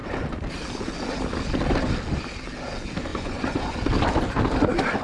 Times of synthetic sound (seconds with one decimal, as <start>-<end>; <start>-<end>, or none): 3.1-3.8